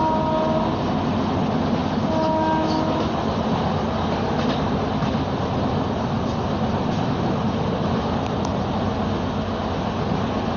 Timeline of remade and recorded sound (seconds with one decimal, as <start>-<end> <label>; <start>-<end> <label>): 0.0-10.6 recorded